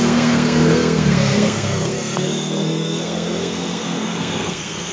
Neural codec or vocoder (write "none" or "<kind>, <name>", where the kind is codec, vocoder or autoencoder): codec, SNAC